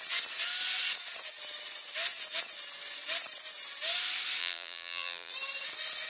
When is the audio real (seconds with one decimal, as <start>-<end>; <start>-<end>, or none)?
0.0-4.4; 5.3-6.1